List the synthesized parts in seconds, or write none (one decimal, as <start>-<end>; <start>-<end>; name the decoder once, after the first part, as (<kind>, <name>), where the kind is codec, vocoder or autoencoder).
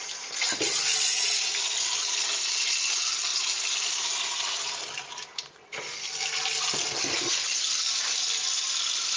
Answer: none